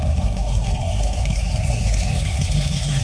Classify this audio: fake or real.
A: fake